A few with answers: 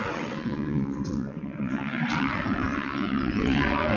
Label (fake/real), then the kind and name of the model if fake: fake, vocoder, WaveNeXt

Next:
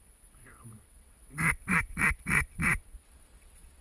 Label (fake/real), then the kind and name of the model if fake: fake, vocoder, WaveNeXt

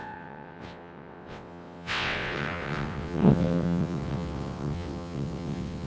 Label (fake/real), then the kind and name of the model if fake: fake, vocoder, WaveNeXt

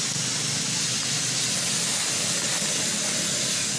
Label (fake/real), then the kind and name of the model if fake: real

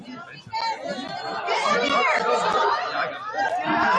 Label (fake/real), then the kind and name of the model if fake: real